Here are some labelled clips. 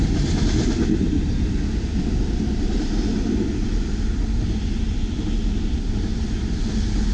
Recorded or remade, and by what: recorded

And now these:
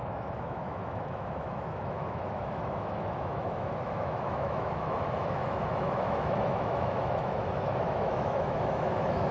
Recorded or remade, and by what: remade, autoencoder, DAC-VAE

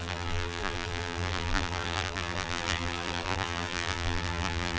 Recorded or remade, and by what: remade, vocoder, BigVGAN v2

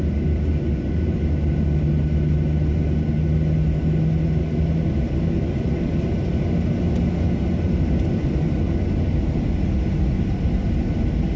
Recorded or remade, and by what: recorded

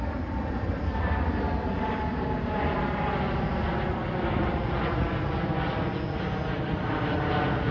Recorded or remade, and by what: recorded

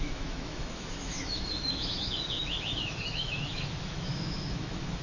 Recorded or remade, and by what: remade, autoencoder, DAC-VAE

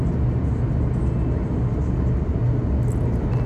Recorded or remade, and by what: recorded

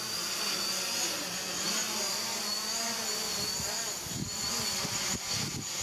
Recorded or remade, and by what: recorded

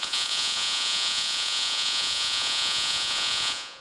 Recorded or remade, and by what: remade, vocoder, Vocos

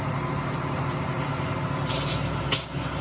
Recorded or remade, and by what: recorded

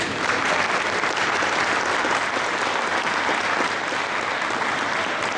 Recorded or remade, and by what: recorded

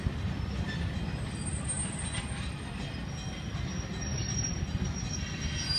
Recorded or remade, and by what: recorded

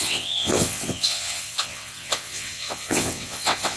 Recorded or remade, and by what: remade, vocoder, WaveNeXt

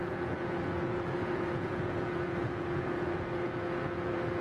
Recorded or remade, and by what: remade, vocoder, Vocos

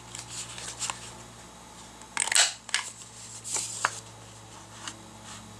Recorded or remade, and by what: recorded